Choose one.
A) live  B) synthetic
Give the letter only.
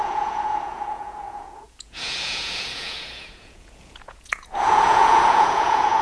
B